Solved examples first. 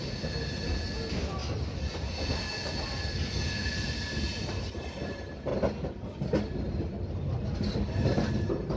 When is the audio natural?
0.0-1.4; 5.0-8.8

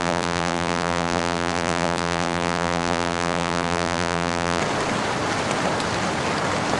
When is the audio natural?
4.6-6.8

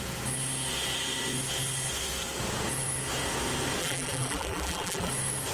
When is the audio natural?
0.0-3.8; 5.1-5.5

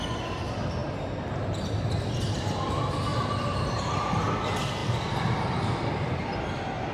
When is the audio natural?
0.0-3.1; 4.3-4.8; 6.5-6.9